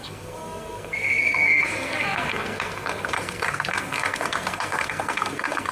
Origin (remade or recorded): remade